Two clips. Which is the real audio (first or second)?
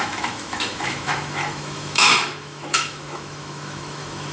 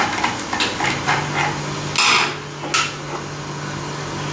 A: second